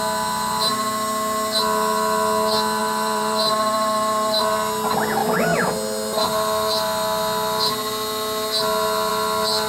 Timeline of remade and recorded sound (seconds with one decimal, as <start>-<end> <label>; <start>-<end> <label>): 0.0-2.8 recorded; 2.8-4.4 remade; 4.4-9.7 recorded